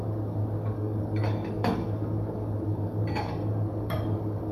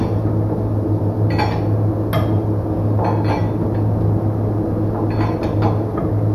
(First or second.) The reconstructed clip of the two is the first